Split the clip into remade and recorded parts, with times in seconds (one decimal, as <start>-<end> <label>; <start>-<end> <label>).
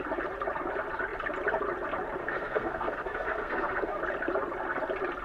0.0-2.2 recorded; 2.2-4.0 remade; 4.0-5.2 recorded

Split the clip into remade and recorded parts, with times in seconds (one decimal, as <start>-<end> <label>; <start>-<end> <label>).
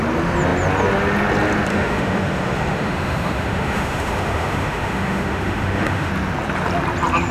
0.0-1.7 recorded; 1.7-6.1 remade; 6.1-7.3 recorded